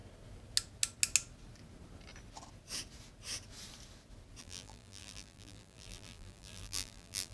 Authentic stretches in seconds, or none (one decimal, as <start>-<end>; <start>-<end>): 0.0-4.4

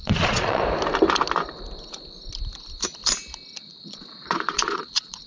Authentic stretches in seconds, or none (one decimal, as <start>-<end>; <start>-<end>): 0.6-3.6

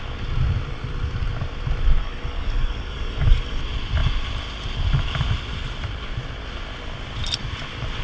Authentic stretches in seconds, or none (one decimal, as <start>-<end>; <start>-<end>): 0.0-2.0; 3.6-8.0

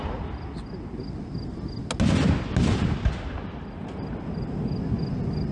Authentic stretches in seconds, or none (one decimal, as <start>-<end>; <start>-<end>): 0.0-5.5

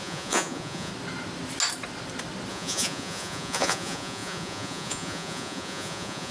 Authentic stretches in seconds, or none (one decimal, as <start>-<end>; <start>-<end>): 0.9-2.5